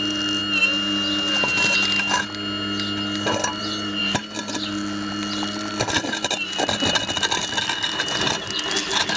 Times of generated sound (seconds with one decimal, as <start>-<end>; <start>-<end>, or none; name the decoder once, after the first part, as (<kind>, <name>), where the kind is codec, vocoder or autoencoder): none